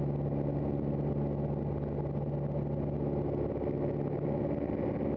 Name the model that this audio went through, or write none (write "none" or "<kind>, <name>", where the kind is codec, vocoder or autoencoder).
none